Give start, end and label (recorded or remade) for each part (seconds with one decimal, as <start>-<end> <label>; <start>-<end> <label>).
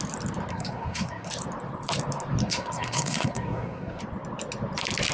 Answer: 0.0-0.5 recorded; 0.5-1.3 remade; 1.3-2.4 recorded; 2.4-4.0 remade; 4.0-5.1 recorded